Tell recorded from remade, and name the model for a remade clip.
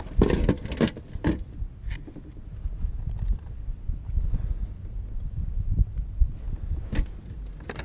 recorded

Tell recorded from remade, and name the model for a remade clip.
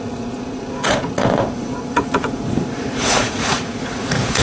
remade, vocoder, Vocos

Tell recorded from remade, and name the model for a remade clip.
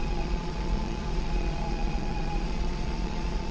remade, vocoder, Vocos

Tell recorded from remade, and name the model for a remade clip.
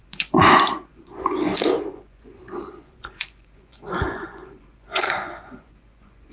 remade, vocoder, Vocos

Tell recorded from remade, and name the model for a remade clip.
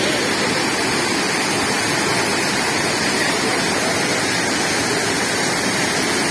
recorded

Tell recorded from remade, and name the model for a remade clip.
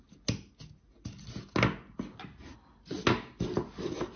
recorded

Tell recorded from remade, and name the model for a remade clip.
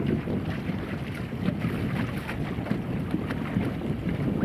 recorded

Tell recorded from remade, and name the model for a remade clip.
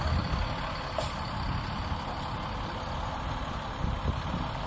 recorded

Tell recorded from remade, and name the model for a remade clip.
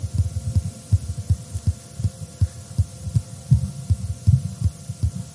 recorded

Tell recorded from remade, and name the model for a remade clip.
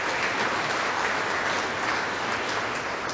recorded